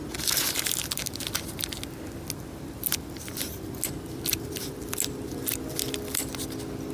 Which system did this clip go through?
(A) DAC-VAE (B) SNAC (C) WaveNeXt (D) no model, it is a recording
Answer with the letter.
D